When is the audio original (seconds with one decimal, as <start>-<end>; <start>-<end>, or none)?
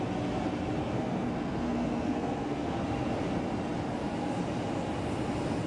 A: 0.0-0.8; 2.8-5.7